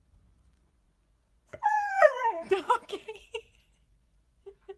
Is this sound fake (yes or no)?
yes